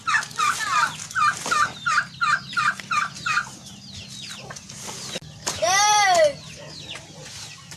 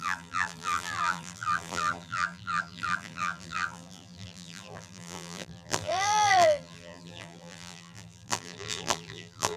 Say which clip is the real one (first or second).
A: first